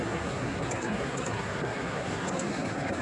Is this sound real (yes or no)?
no